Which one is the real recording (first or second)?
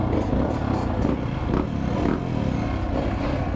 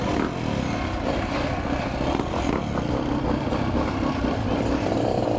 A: first